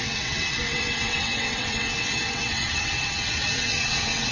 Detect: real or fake fake